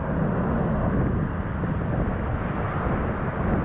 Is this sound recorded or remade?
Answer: recorded